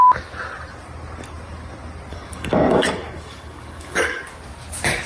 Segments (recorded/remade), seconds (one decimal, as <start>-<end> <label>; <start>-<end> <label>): 0.0-2.1 recorded; 2.1-4.2 remade; 4.2-5.1 recorded